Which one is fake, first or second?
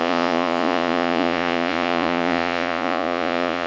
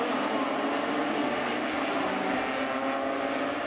first